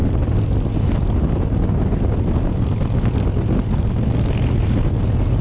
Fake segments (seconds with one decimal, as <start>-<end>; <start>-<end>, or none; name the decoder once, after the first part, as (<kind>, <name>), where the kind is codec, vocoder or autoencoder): none